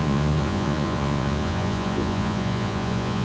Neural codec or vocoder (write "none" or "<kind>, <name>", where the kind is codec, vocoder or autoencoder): vocoder, Vocos